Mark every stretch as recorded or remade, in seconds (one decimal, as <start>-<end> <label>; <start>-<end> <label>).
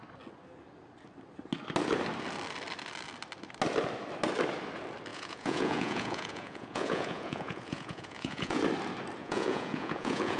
0.0-5.1 recorded; 5.1-8.6 remade; 8.6-9.2 recorded; 9.2-10.4 remade